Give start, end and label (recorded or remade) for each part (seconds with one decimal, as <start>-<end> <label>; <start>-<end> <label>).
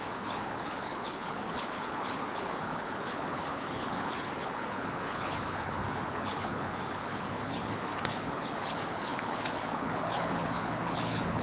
0.0-11.4 remade